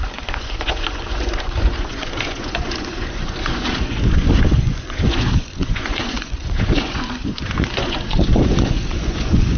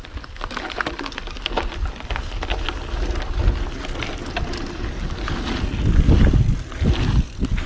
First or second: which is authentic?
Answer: second